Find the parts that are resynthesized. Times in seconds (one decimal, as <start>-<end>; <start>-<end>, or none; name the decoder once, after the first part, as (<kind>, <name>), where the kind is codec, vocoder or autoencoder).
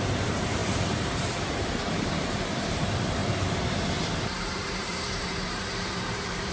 0.0-3.2 (vocoder, BigVGAN v2); 4.2-6.5